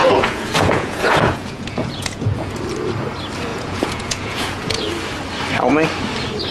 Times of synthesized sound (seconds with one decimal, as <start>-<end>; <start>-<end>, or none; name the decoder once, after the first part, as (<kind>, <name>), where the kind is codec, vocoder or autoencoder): 0.0-2.6 (vocoder, Vocos); 3.5-4.8

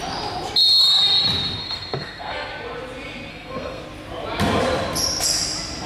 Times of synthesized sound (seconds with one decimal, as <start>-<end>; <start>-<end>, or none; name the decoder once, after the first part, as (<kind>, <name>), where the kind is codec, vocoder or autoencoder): 1.6-2.5 (codec, SNAC); 3.3-3.8

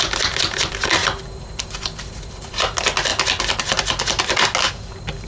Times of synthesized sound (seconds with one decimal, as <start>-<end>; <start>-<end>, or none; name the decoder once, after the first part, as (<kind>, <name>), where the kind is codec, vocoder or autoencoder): none

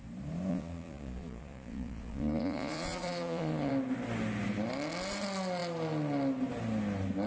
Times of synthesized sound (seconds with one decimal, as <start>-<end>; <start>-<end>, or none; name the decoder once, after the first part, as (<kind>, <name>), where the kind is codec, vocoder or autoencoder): 0.5-3.7 (vocoder, Vocos)

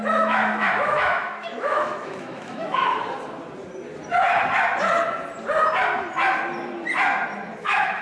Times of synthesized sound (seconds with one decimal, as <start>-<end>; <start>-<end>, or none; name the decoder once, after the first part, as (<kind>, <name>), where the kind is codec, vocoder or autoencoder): 0.0-2.8 (autoencoder, DAC-VAE); 7.6-8.0